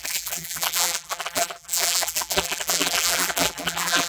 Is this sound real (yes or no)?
no